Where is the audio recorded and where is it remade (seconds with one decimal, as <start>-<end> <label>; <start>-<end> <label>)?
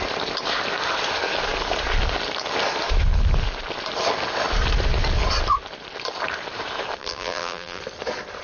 0.0-7.0 recorded; 7.0-7.8 remade; 7.8-8.4 recorded